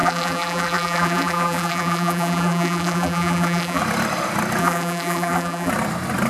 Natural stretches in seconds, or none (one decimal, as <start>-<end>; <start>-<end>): 3.8-4.6; 5.7-6.3